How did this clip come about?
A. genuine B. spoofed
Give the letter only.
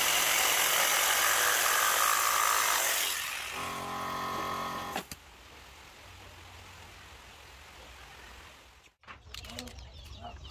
A